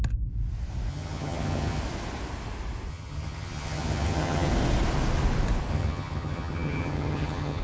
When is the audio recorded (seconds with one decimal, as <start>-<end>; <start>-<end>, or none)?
0.0-0.9; 1.8-2.9; 4.5-5.7